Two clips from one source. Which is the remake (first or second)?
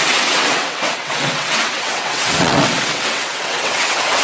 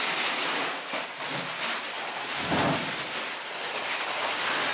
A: first